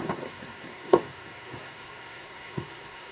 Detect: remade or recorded remade